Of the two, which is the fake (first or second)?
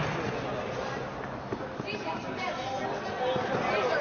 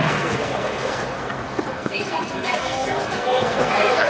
second